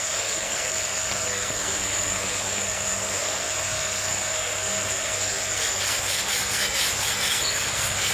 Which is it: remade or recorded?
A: remade